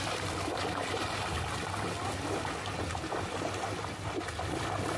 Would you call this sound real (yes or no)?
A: yes